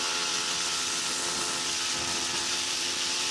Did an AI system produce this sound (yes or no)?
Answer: yes